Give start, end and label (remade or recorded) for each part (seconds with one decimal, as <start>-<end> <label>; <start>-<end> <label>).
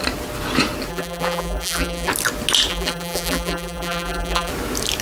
0.0-0.9 recorded; 0.9-2.1 remade; 2.1-2.7 recorded; 2.7-4.5 remade; 4.5-5.0 recorded